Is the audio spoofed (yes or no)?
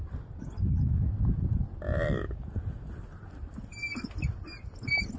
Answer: no